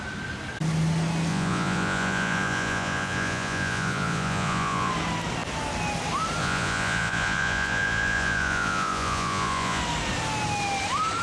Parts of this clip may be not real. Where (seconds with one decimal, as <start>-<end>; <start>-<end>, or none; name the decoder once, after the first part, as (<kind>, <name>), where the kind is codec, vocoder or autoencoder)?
1.3-4.9 (vocoder, Vocos); 6.4-9.8